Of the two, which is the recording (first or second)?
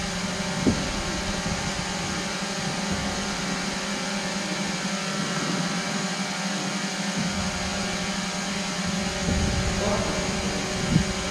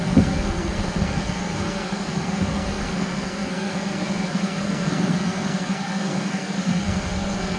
first